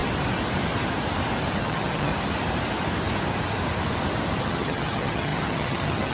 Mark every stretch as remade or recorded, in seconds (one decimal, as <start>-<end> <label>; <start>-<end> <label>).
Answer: 0.0-1.6 recorded; 1.6-2.1 remade; 2.1-4.4 recorded; 4.4-6.1 remade